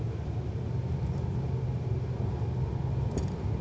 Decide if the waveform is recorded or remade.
recorded